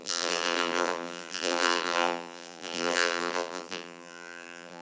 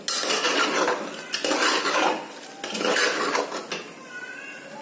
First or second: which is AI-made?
first